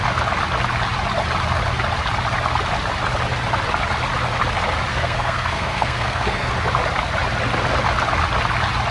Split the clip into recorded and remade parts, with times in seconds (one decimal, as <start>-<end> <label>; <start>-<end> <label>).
0.0-4.9 recorded; 4.9-6.5 remade; 6.5-8.9 recorded

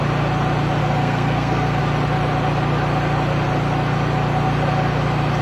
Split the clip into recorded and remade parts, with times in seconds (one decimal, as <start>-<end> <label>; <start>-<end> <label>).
0.0-0.8 recorded; 0.8-1.8 remade; 1.8-5.4 recorded